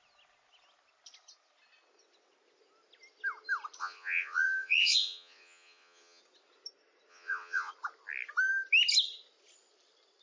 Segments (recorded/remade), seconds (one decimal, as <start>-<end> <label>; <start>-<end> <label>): 0.0-3.8 recorded; 3.8-6.2 remade; 6.2-7.1 recorded; 7.1-7.7 remade; 7.7-10.2 recorded